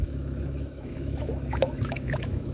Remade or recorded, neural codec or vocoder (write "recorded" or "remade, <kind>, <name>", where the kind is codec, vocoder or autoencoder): remade, autoencoder, DAC-VAE